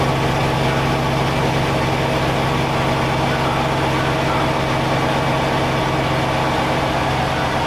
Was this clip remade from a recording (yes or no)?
no